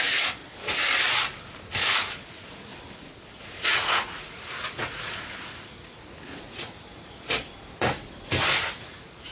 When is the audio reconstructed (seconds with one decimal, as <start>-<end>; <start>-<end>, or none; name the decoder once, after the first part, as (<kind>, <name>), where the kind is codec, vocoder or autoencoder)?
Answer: 0.0-0.4 (vocoder, Vocos); 1.6-2.7; 3.4-7.5; 8.7-9.3